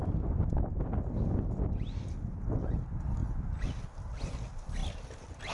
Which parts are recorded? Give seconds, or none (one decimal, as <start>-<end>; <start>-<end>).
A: 0.0-2.6; 3.2-4.1